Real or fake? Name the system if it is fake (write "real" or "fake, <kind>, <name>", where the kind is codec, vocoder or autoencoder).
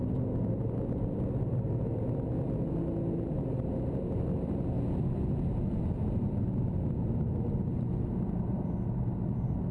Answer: real